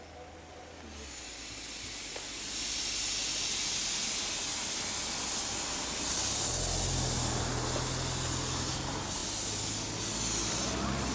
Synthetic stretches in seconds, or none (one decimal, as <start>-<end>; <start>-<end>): none